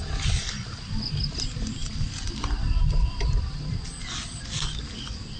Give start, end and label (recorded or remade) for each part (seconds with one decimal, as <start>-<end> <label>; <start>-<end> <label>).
0.0-5.4 recorded